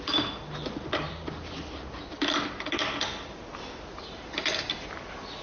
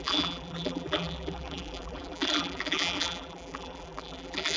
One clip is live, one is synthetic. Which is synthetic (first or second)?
second